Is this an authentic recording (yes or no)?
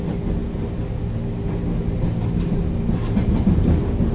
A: yes